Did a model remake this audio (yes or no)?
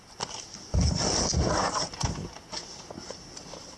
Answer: no